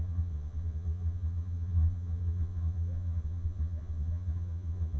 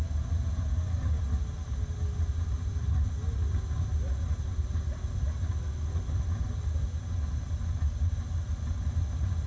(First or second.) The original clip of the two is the second